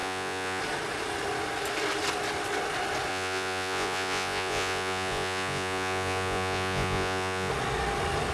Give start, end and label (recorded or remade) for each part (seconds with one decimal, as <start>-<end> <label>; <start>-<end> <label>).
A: 0.0-0.6 remade; 0.6-3.1 recorded; 3.1-7.5 remade; 7.5-8.3 recorded